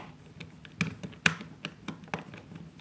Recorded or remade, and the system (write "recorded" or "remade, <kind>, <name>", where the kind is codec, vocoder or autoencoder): recorded